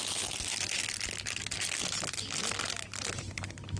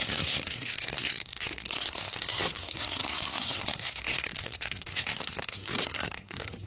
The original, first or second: first